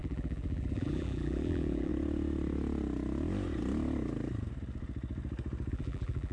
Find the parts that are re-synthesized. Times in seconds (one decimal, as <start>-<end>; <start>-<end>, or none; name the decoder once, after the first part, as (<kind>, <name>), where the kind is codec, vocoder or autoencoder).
0.0-1.9 (vocoder, BigVGAN v2); 5.7-6.3